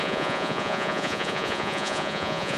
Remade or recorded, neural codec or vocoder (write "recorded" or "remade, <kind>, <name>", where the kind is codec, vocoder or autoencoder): remade, vocoder, Vocos